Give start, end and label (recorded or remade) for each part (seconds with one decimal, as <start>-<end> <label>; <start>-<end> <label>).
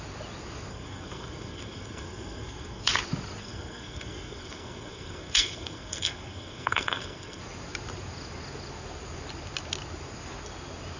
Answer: 0.0-0.7 recorded; 0.7-2.9 remade; 2.9-3.4 recorded; 3.4-7.4 remade; 7.4-11.0 recorded